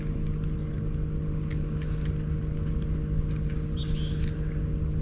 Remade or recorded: recorded